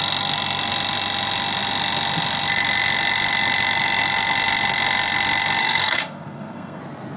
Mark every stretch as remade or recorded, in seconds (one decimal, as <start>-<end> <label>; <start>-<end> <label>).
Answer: 0.0-5.6 recorded; 5.6-6.8 remade; 6.8-7.2 recorded